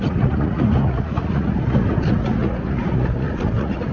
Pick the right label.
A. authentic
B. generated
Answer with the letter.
B